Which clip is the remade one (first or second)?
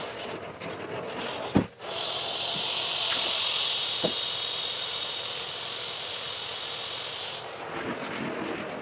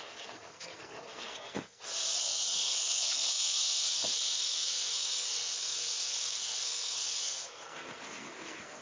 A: second